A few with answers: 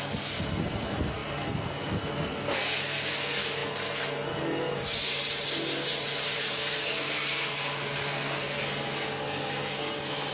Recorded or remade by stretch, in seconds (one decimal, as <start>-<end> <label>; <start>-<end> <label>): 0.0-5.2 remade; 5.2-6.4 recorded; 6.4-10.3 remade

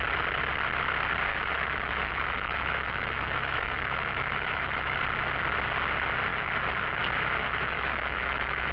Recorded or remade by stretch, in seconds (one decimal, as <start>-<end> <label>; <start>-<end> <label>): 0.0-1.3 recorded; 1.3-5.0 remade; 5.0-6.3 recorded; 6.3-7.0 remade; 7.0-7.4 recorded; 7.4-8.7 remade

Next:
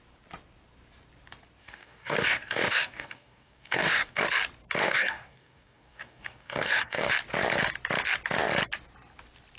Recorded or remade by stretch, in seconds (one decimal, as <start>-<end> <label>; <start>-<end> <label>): 0.0-1.6 recorded; 1.6-4.2 remade; 4.2-4.8 recorded; 4.8-7.1 remade; 7.1-9.6 recorded

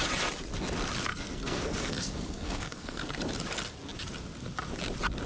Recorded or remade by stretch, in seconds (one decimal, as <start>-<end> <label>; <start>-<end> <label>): 0.0-1.1 recorded; 1.1-3.2 remade; 3.2-5.3 recorded